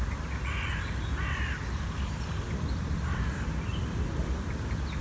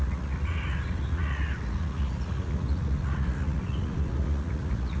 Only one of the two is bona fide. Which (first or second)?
first